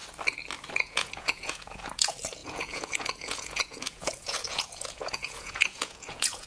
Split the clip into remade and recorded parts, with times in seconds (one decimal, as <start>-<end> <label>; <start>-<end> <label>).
0.0-0.7 recorded; 0.7-6.5 remade